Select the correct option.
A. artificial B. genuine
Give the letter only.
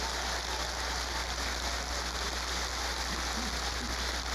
B